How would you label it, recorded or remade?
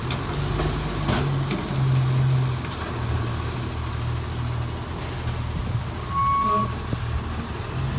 recorded